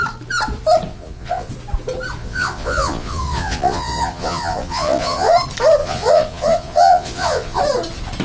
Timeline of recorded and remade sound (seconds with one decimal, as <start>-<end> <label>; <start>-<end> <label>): 0.0-0.9 recorded; 0.9-1.5 remade; 1.5-2.2 recorded; 2.2-5.3 remade; 5.3-5.8 recorded; 5.8-7.6 remade; 7.6-8.2 recorded